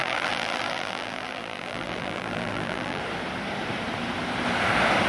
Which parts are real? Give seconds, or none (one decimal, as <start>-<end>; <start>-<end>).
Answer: 3.0-5.1